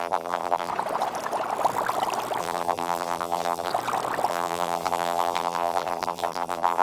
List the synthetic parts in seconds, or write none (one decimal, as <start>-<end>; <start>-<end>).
0.0-0.7; 2.4-3.7; 4.3-6.8